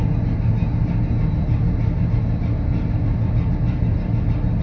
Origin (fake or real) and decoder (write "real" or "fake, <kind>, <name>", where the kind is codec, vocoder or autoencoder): real